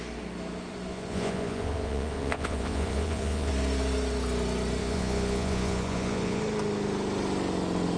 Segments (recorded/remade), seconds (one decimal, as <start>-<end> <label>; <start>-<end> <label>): 0.0-0.9 recorded; 0.9-3.5 remade; 3.5-4.8 recorded; 4.8-6.4 remade; 6.4-8.0 recorded